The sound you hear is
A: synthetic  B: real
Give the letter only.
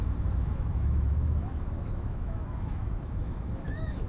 A